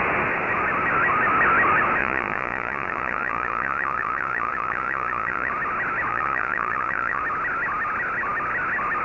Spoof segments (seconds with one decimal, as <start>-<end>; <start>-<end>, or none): 2.0-5.5; 6.1-7.2